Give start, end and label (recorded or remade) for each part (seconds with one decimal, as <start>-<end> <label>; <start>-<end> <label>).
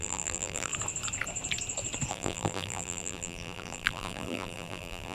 0.0-0.7 remade; 0.7-2.1 recorded; 2.1-5.1 remade